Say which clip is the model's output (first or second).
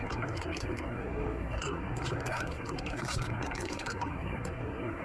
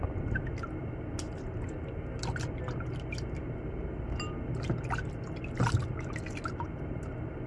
first